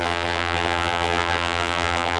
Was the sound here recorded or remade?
remade